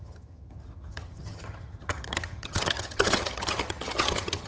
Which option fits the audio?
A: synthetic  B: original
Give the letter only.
A